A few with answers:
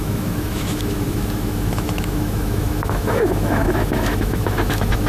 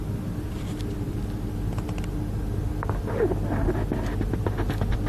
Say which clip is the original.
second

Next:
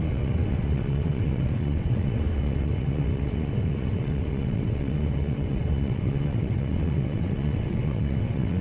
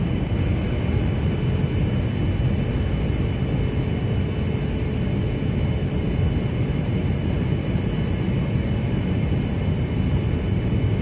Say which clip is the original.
second